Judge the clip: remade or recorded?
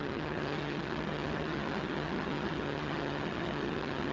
remade